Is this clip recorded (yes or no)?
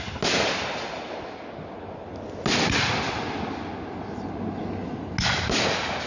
yes